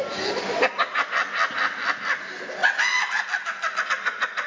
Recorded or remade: recorded